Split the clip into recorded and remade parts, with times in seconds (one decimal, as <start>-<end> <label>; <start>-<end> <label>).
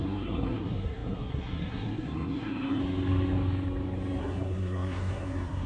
0.0-2.8 remade; 2.8-4.2 recorded; 4.2-5.7 remade